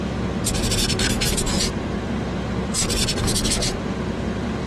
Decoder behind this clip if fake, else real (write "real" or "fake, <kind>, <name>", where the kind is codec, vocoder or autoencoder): fake, vocoder, BigVGAN v2